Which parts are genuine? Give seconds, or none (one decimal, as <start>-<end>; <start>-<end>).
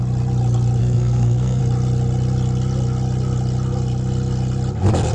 0.0-0.8; 1.6-5.1